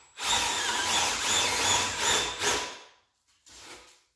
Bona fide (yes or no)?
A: yes